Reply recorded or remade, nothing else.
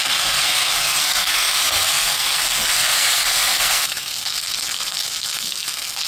remade